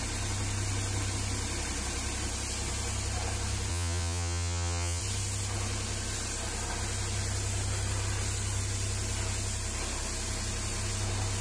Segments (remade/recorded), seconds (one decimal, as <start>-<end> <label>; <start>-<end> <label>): 0.0-3.7 recorded; 3.7-5.0 remade; 5.0-11.4 recorded